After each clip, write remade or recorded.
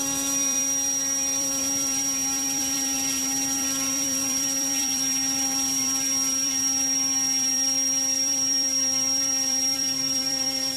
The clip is remade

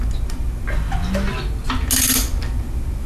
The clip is recorded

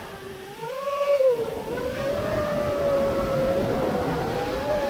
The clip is recorded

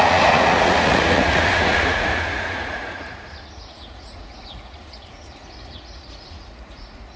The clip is remade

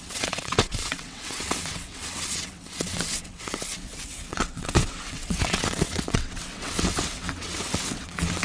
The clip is remade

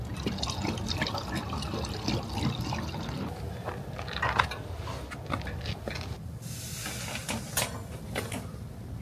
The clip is recorded